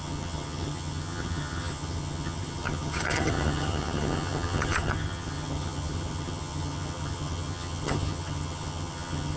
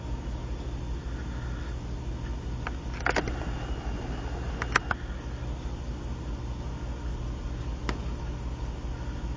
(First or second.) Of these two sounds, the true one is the second